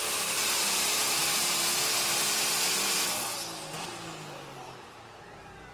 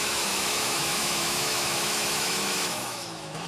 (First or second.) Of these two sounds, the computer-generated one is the second